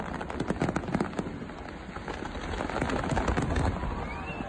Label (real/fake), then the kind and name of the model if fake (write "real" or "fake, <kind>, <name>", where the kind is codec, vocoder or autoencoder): real